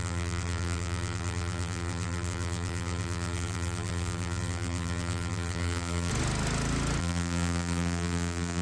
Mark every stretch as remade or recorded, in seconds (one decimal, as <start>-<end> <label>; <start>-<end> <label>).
0.0-6.1 remade; 6.1-7.0 recorded; 7.0-8.6 remade